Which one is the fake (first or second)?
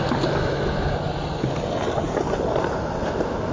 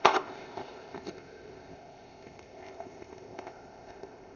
second